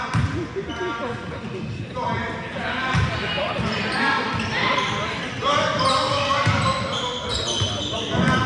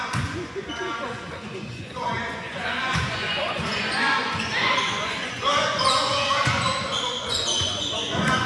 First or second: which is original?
first